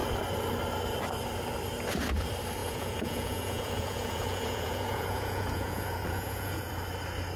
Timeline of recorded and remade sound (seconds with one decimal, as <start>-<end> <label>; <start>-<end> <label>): 0.0-2.6 recorded; 2.6-6.7 remade; 6.7-7.4 recorded